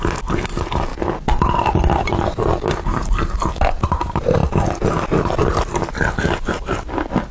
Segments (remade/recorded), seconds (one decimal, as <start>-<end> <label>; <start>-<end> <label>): 0.0-0.9 remade; 0.9-3.7 recorded; 3.7-4.4 remade; 4.4-6.5 recorded; 6.5-7.3 remade